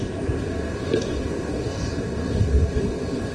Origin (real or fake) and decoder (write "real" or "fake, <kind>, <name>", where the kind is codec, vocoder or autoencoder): fake, codec, SNAC